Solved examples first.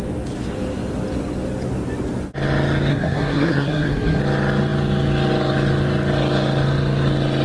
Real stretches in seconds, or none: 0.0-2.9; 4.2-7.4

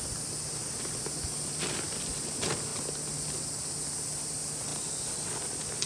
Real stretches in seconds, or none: 0.0-5.9

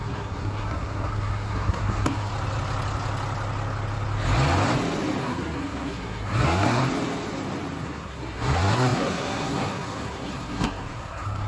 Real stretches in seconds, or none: 2.3-5.2; 6.8-7.8

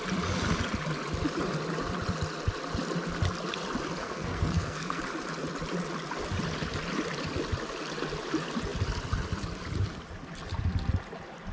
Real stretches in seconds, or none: 0.0-4.0; 5.0-11.5

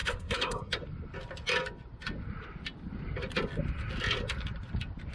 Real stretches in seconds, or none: 0.7-5.1